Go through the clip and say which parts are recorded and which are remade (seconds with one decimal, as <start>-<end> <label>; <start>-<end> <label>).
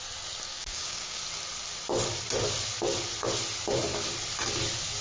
0.0-0.5 recorded; 0.5-1.2 remade; 1.2-5.0 recorded